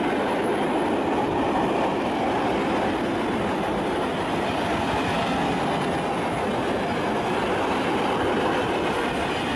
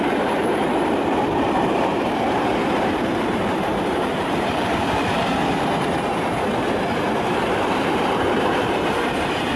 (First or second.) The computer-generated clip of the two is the second